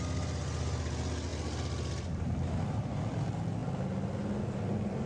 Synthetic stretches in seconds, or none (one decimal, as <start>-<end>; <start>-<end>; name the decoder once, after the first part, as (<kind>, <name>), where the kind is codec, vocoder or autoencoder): none